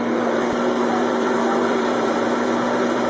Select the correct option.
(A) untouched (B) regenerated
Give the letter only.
B